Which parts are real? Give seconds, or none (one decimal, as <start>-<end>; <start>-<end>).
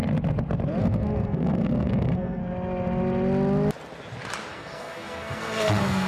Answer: 0.0-0.8; 2.4-4.5